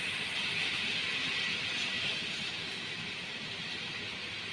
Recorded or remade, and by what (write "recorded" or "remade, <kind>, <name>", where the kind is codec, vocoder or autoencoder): recorded